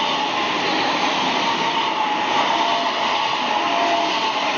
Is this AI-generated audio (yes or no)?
no